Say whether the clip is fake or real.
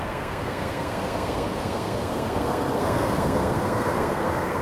fake